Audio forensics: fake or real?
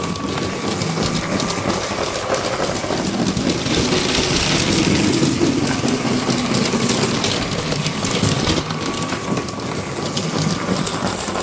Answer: real